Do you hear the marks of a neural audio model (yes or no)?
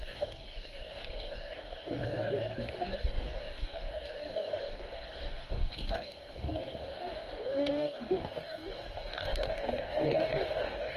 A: yes